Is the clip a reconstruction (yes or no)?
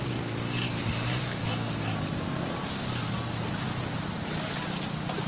no